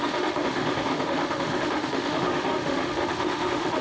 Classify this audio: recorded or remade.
remade